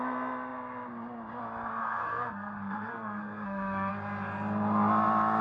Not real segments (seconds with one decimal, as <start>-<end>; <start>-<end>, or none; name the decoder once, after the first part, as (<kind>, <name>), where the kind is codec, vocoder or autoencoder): 1.8-3.9 (codec, SNAC)